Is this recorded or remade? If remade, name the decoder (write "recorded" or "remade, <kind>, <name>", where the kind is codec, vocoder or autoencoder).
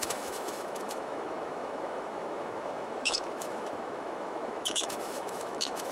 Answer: remade, autoencoder, DAC-VAE